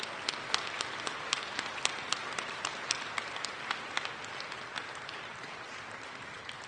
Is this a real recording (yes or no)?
yes